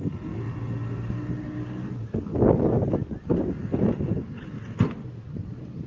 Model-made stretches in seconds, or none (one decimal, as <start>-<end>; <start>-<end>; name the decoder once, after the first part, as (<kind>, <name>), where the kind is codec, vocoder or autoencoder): none